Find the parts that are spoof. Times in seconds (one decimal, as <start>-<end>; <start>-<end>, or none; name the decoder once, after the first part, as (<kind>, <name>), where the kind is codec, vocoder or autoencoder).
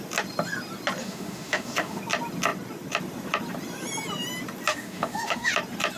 1.0-2.0 (autoencoder, DAC-VAE); 4.7-5.5